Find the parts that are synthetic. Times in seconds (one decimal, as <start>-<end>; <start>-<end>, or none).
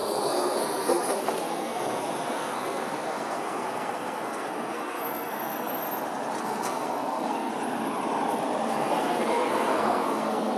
0.0-5.8; 6.4-7.5; 8.7-10.6